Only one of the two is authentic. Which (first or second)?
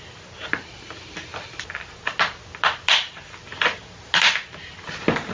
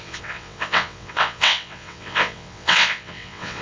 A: first